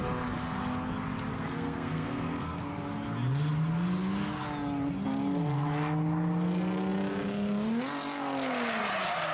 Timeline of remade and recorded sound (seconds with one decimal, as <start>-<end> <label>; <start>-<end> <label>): 0.0-1.3 recorded; 1.3-2.6 remade; 2.6-9.3 recorded